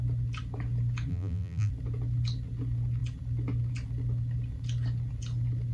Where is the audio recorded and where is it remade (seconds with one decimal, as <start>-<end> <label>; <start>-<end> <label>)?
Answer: 0.0-1.1 recorded; 1.1-1.7 remade; 1.7-5.7 recorded